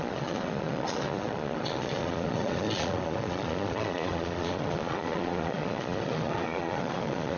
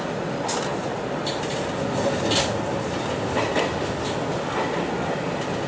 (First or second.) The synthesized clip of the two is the first